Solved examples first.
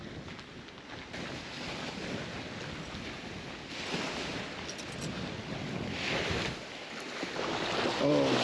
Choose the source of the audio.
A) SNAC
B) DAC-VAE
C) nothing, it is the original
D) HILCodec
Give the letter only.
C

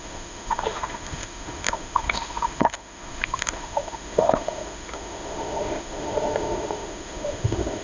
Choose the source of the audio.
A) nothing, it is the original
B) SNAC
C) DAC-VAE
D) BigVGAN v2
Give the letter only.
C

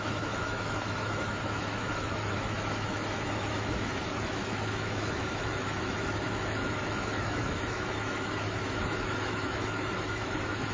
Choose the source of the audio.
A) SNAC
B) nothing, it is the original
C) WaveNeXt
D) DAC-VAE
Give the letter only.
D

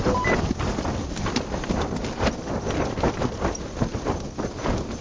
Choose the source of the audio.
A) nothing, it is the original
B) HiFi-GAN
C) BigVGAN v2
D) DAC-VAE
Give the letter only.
A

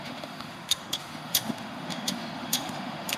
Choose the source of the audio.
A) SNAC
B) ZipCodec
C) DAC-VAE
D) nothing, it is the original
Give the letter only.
C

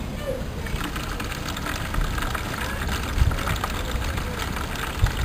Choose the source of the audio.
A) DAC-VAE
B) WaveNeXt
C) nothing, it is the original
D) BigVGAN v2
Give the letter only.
C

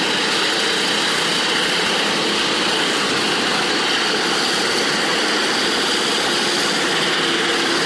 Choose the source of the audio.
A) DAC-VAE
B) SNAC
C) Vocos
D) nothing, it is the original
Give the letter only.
D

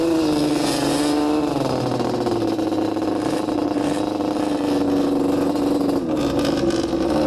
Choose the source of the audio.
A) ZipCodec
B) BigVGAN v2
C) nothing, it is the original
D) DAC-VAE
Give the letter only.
C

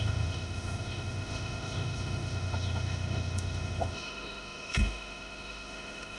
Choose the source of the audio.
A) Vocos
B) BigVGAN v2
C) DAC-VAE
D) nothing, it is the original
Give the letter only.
C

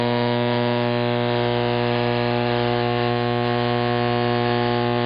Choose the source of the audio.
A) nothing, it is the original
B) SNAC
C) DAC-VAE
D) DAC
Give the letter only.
C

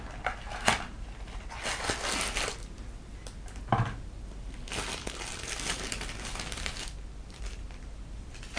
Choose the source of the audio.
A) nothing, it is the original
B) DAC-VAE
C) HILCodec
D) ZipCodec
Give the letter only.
A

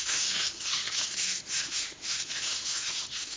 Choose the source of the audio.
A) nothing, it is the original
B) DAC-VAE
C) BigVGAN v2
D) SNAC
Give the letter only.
B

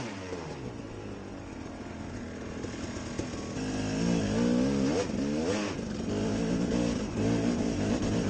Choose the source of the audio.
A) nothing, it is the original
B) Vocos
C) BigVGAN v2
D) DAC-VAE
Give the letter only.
A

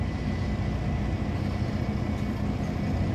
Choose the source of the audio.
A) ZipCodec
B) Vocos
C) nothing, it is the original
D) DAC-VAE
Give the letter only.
C